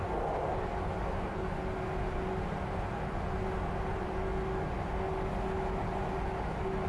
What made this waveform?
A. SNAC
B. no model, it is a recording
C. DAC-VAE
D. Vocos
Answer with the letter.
B